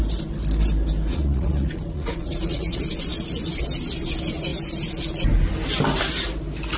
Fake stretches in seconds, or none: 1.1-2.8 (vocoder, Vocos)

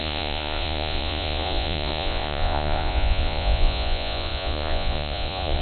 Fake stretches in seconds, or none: 0.0-5.6 (vocoder, Vocos)

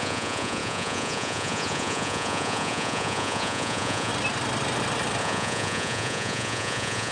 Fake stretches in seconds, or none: 0.0-4.1 (vocoder, Vocos); 5.2-7.1

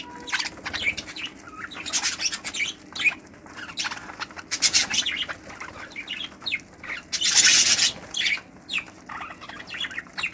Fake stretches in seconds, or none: none

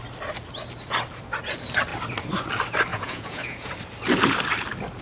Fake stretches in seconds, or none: 2.9-3.7 (vocoder, Vocos)